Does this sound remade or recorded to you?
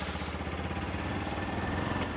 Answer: recorded